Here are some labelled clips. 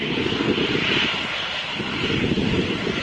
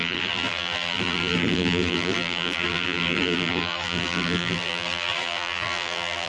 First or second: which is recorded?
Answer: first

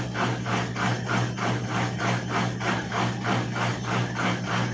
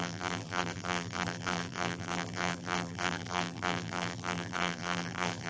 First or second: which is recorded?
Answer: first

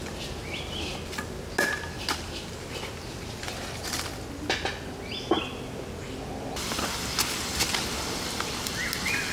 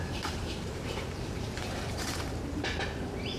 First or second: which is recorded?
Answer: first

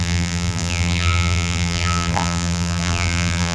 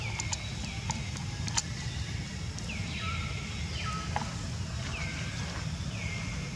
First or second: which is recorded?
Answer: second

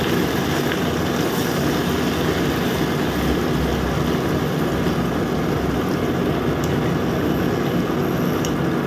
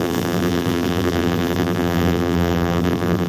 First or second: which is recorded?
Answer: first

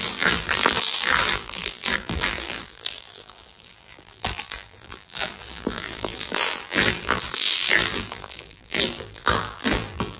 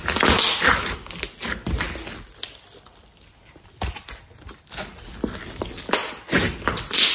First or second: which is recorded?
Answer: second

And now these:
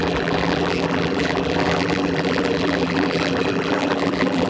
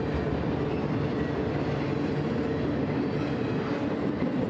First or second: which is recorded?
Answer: second